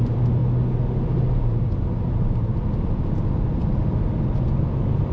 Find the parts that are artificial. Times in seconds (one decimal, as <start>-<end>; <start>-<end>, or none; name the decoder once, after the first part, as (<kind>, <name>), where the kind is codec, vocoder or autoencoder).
0.0-0.4 (vocoder, BigVGAN v2); 2.7-5.1